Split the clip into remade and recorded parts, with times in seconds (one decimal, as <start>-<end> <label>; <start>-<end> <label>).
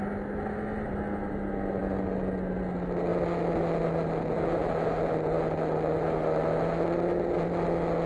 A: 0.0-8.1 recorded